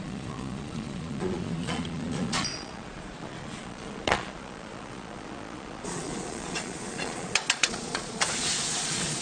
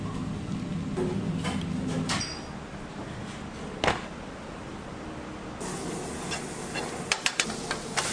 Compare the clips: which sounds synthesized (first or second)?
first